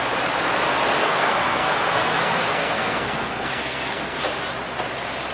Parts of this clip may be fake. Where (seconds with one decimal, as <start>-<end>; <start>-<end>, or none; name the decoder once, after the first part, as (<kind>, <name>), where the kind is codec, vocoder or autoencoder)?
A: 1.0-4.2 (codec, SNAC)